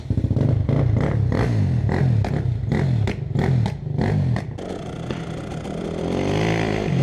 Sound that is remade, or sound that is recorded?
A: recorded